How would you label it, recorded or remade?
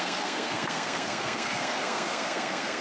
remade